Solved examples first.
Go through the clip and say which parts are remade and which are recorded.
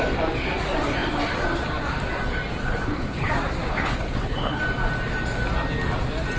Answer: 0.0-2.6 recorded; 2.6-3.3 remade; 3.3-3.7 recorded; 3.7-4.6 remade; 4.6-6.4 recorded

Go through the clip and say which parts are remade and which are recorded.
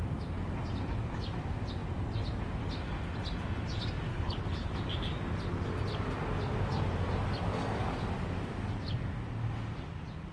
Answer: 0.0-4.1 recorded; 4.1-4.7 remade; 4.7-10.3 recorded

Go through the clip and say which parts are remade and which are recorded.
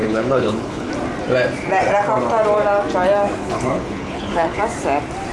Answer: 0.0-0.9 remade; 0.9-3.4 recorded; 3.4-4.6 remade; 4.6-5.3 recorded